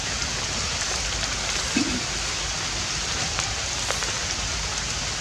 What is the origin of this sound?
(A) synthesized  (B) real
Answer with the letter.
B